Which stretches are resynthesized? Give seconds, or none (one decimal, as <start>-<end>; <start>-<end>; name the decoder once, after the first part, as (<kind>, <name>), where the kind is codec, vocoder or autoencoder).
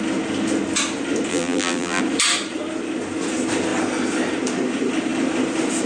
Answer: 1.3-2.0 (vocoder, BigVGAN v2)